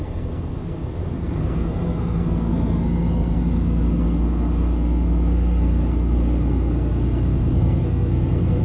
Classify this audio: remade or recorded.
remade